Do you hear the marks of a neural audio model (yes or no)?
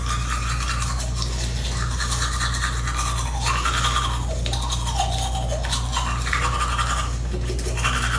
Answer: no